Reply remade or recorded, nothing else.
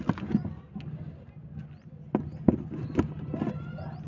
recorded